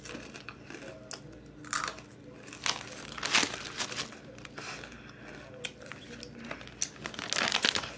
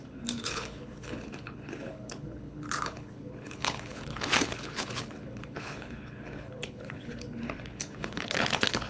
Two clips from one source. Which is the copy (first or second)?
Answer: second